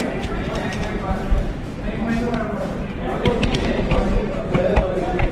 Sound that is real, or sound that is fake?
fake